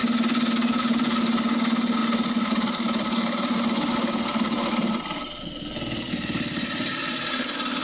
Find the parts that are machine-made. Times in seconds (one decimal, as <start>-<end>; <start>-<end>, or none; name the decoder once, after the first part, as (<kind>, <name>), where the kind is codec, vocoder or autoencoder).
none